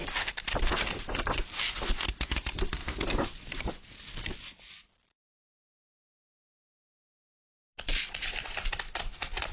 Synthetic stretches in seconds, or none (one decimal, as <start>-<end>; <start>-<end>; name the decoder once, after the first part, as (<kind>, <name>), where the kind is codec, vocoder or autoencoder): 2.8-3.7 (vocoder, BigVGAN v2)